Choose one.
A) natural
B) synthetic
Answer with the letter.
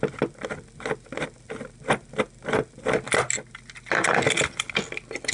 A